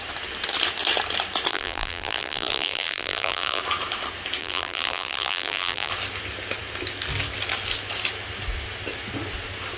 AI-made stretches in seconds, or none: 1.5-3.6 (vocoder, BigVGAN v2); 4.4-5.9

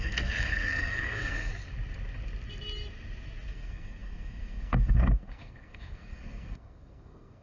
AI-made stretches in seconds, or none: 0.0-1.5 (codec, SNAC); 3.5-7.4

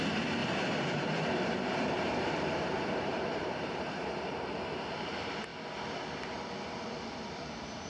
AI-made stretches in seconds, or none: 0.0-5.5 (vocoder, BigVGAN v2)

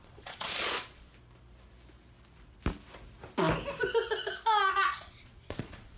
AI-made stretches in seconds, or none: 0.0-1.1 (vocoder, Vocos); 4.7-6.0

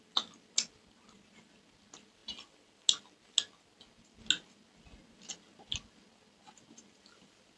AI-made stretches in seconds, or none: none

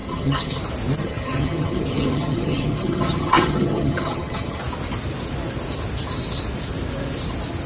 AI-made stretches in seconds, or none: 0.0-0.6 (vocoder, HiFi-GAN); 1.0-4.6

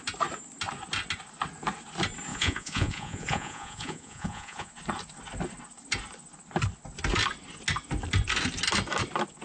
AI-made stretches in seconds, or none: 2.3-4.7 (vocoder, Vocos)